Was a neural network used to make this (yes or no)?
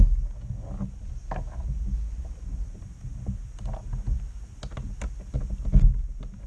no